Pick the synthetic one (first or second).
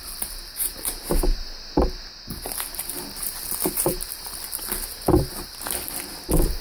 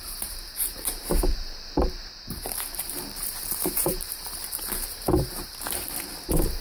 second